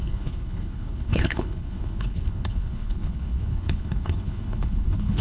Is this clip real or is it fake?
fake